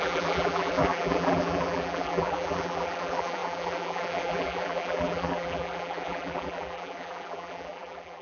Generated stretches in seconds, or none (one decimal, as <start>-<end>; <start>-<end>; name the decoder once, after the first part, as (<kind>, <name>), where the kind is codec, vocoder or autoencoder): 0.0-8.2 (vocoder, BigVGAN v2)